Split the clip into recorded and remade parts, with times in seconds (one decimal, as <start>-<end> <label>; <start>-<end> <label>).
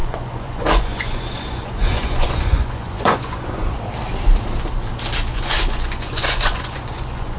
0.0-3.8 remade; 3.8-5.3 recorded; 5.3-7.4 remade